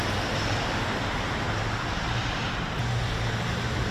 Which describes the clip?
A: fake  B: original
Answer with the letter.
A